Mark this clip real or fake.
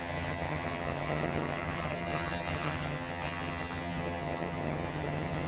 fake